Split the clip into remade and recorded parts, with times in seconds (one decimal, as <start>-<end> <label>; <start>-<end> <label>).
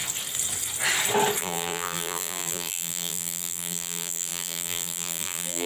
0.0-1.4 recorded; 1.4-5.7 remade